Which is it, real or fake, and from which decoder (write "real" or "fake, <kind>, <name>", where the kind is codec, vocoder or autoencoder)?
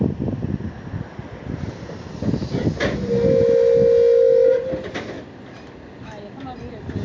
real